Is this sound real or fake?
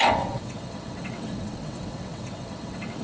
fake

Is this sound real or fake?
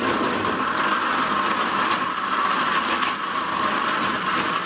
fake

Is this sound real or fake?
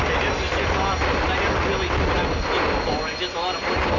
real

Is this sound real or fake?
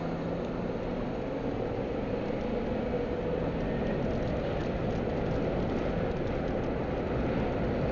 real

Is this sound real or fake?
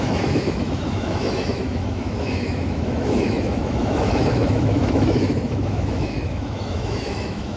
fake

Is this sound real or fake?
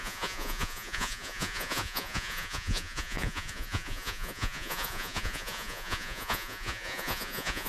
fake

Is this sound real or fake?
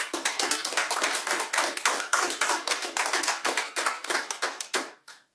fake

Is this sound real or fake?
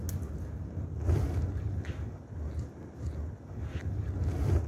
real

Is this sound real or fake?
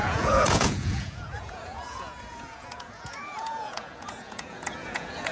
fake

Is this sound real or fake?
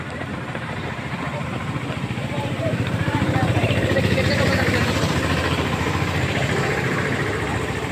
fake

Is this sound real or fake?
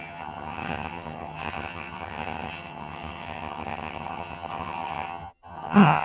fake